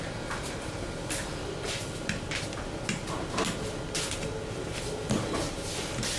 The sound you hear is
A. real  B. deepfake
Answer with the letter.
A